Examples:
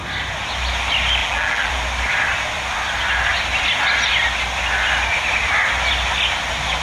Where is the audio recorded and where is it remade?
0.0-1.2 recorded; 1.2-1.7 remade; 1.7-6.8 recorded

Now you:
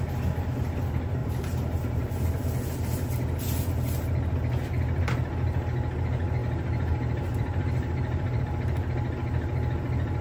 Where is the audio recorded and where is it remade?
0.0-1.2 recorded; 1.2-2.1 remade; 2.1-6.4 recorded; 6.4-8.4 remade; 8.4-10.2 recorded

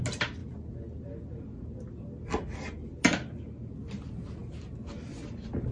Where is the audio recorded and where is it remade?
0.0-5.7 recorded

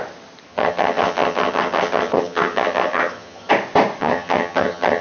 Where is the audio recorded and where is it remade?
0.0-0.5 recorded; 0.5-3.5 remade; 3.5-4.0 recorded; 4.0-5.0 remade

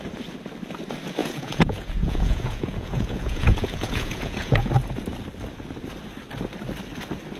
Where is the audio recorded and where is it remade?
0.0-1.2 recorded; 1.2-4.7 remade; 4.7-7.4 recorded